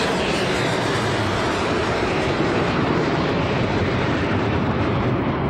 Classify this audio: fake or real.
fake